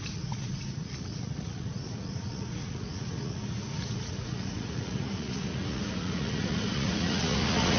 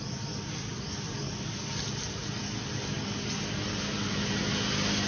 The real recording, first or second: second